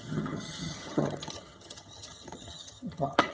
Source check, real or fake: fake